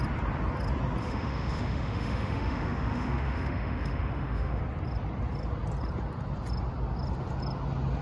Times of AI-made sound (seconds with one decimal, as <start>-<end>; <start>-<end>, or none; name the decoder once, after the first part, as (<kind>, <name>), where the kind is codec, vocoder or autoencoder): 1.0-4.6 (autoencoder, DAC-VAE)